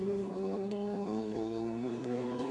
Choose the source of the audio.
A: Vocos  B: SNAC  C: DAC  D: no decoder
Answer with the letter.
B